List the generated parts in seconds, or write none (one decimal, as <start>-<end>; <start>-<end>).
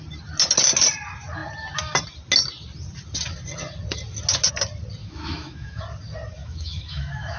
5.0-5.8; 6.4-7.4